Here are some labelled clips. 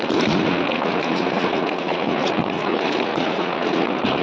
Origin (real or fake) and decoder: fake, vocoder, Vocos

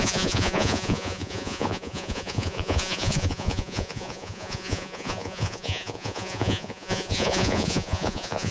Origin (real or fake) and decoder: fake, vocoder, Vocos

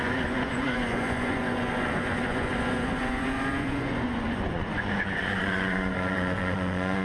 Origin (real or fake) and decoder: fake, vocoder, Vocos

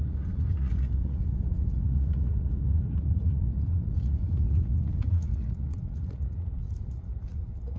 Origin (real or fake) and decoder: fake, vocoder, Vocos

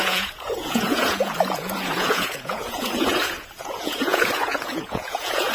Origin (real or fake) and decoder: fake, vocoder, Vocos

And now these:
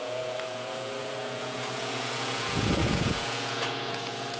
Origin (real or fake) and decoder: fake, vocoder, Vocos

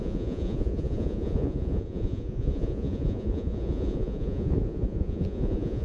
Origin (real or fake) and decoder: fake, vocoder, Vocos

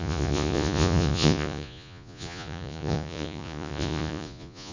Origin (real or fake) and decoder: fake, vocoder, Vocos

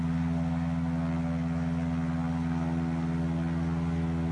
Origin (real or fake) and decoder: real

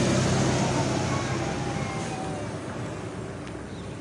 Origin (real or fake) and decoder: real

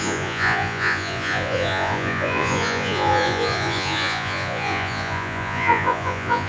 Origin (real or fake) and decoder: fake, vocoder, Vocos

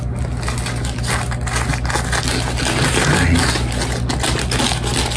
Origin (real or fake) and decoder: real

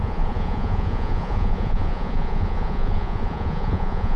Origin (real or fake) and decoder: fake, vocoder, Vocos